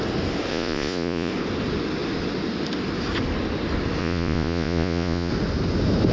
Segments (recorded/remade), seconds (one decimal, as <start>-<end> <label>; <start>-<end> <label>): 0.0-0.5 recorded; 0.5-1.3 remade; 1.3-4.0 recorded; 4.0-5.3 remade; 5.3-6.1 recorded